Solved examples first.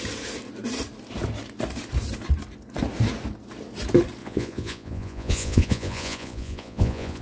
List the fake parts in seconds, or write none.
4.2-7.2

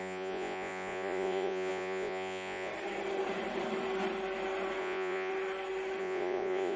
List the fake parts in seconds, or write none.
0.0-2.7; 4.8-5.3; 6.0-6.8

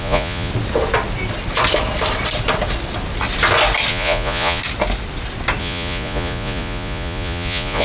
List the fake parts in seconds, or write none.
0.0-0.5; 3.9-4.6; 5.6-7.8

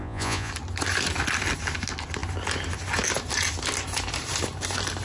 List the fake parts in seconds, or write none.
0.0-0.5

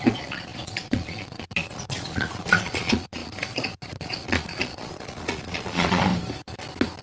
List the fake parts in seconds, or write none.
0.0-6.1

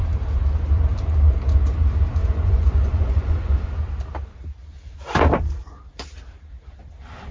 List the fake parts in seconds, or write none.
2.2-3.7

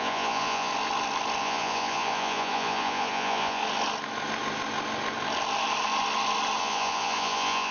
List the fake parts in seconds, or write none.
0.0-0.7; 1.4-3.6; 6.6-7.7